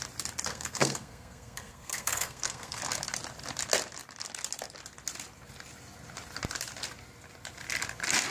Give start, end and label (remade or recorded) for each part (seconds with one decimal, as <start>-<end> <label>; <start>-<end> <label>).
0.0-0.5 recorded; 0.5-2.8 remade; 2.8-8.3 recorded

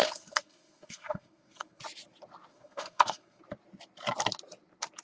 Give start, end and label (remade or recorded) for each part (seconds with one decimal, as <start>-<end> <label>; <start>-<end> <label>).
0.0-1.8 remade; 1.8-2.5 recorded; 2.5-3.4 remade; 3.4-5.0 recorded

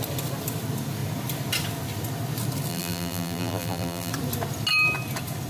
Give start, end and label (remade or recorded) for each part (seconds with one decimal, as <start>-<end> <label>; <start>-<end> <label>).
0.0-2.7 recorded; 2.7-4.1 remade; 4.1-5.5 recorded